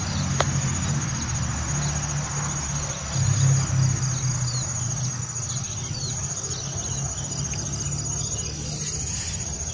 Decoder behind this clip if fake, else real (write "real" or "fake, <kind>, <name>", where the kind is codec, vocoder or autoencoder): real